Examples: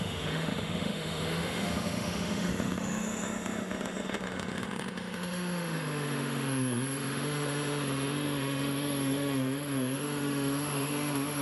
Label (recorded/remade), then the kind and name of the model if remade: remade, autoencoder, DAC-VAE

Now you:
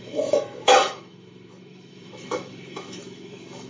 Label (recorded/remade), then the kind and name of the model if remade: remade, autoencoder, DAC-VAE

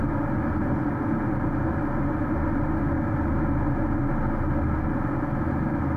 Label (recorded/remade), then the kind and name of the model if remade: recorded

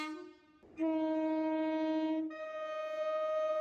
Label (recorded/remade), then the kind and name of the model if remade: recorded